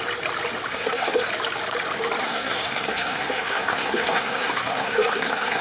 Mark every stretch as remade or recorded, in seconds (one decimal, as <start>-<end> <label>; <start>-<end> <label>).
0.0-0.7 recorded; 0.7-1.3 remade; 1.3-2.2 recorded; 2.2-5.6 remade